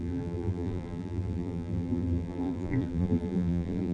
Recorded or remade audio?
remade